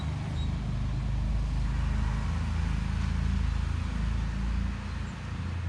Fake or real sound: real